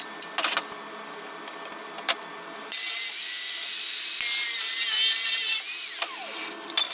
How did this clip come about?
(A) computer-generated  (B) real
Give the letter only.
B